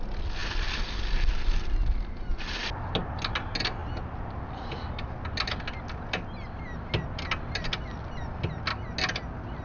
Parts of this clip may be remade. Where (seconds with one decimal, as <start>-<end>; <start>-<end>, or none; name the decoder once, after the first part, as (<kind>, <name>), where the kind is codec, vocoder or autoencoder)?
none